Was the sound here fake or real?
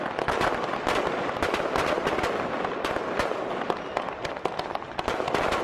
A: real